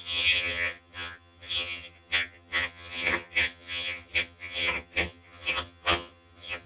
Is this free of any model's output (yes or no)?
no